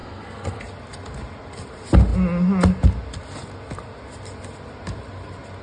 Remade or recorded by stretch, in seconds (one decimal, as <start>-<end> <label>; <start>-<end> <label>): 0.0-0.6 remade; 0.6-5.6 recorded